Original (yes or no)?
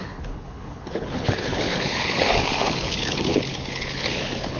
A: no